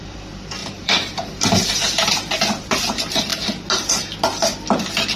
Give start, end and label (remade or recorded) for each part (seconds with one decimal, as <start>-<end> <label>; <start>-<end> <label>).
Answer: 0.0-0.6 recorded; 0.6-2.3 remade; 2.3-5.2 recorded